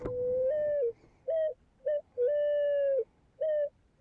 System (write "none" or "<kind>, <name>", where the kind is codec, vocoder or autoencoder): none